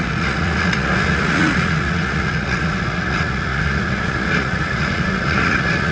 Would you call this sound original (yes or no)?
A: no